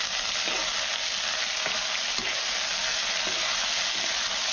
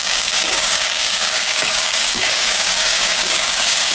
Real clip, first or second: first